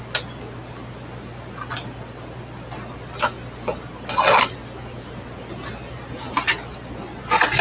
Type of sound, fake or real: real